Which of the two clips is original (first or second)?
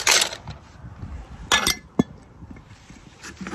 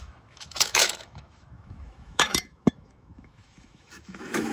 first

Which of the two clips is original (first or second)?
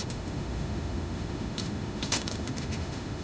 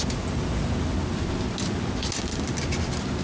second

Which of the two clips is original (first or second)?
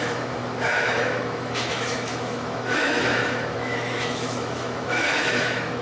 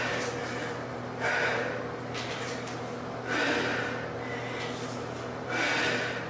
second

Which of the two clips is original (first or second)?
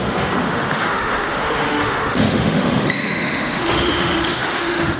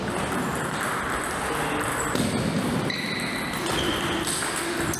second